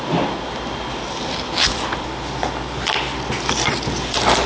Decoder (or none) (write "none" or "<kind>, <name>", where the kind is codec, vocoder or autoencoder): none